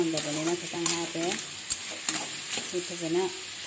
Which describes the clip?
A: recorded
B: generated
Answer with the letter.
A